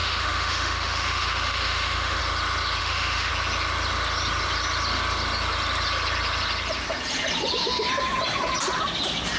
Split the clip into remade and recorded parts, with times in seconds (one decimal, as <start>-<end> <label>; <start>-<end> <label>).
0.0-2.2 remade; 2.2-2.8 recorded; 2.8-3.3 remade; 3.3-9.4 recorded